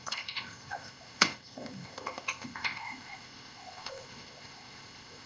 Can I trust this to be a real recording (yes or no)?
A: no